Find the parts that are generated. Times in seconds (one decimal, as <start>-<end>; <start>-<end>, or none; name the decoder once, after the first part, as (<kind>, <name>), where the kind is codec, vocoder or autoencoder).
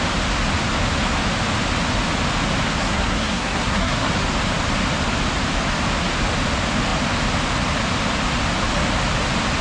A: 2.8-4.1 (codec, SNAC)